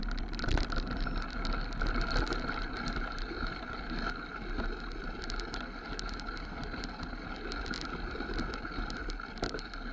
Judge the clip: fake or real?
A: real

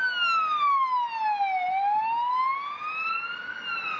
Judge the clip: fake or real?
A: real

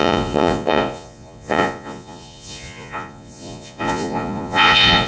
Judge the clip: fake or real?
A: fake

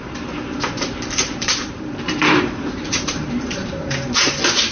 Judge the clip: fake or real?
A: fake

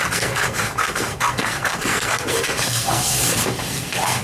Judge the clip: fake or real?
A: fake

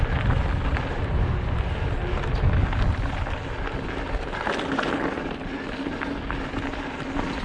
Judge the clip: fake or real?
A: real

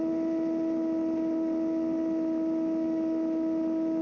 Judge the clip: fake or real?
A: real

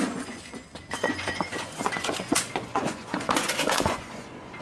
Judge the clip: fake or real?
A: fake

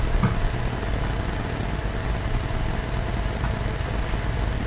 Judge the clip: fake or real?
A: real